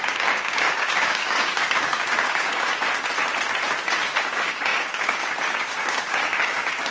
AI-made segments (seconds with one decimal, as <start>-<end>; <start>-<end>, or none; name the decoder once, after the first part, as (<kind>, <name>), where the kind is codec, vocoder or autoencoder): 0.0-2.7 (codec, DAC); 3.8-6.9